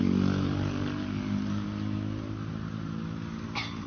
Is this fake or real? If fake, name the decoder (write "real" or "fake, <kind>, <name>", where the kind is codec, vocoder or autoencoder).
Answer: real